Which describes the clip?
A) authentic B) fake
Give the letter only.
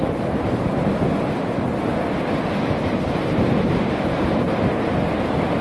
A